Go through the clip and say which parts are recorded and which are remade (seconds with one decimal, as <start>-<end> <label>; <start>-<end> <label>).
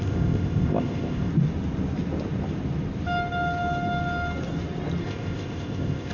0.0-1.3 remade; 1.3-5.0 recorded; 5.0-6.1 remade